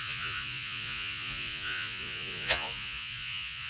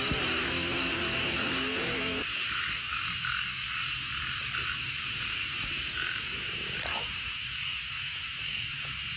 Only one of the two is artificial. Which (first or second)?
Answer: first